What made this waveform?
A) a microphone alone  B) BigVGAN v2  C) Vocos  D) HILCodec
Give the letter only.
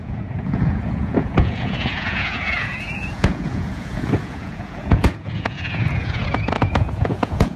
C